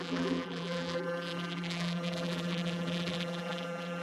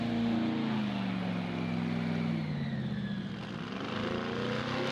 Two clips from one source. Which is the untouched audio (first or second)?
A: second